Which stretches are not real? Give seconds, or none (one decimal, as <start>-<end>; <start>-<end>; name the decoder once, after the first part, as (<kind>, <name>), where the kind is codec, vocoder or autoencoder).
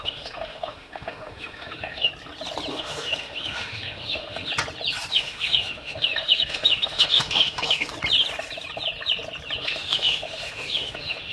0.0-2.1 (autoencoder, DAC-VAE); 2.7-4.5; 5.1-7.9; 9.6-11.3